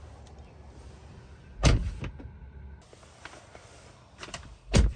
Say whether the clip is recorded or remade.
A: recorded